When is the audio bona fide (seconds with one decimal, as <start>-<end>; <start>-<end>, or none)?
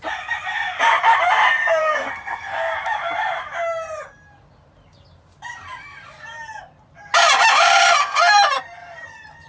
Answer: 0.0-1.8; 2.7-9.5